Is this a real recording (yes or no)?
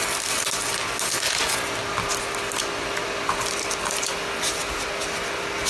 yes